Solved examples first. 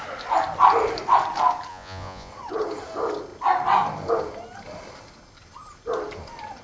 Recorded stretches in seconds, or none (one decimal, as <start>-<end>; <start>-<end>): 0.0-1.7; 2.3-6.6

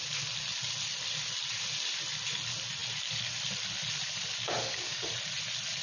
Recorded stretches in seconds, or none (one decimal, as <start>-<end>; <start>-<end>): 0.0-4.4; 5.1-5.8

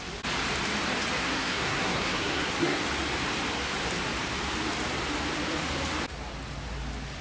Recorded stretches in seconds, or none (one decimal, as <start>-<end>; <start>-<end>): 0.0-1.2; 2.8-7.2

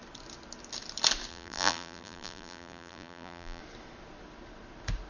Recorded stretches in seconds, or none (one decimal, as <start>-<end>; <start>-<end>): 0.0-1.3; 3.6-5.1